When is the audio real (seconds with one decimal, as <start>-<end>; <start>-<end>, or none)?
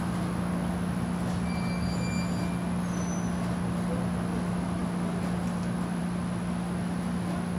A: 0.0-7.6